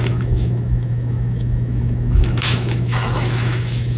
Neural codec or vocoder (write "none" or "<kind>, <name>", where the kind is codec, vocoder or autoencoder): autoencoder, DAC-VAE